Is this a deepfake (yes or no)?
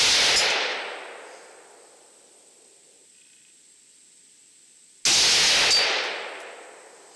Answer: no